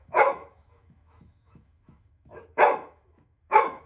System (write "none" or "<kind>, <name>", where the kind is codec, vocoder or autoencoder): autoencoder, DAC-VAE